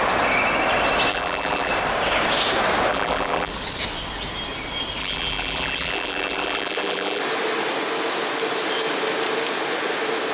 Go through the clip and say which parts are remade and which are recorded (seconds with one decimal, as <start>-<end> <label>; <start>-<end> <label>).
0.0-1.1 recorded; 1.1-1.7 remade; 1.7-2.9 recorded; 2.9-3.5 remade; 3.5-5.0 recorded; 5.0-7.2 remade; 7.2-10.3 recorded